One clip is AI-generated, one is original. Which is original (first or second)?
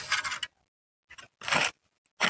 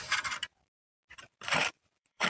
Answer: first